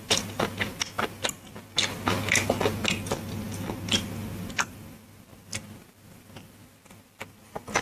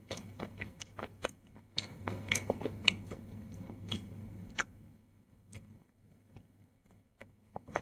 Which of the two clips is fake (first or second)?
second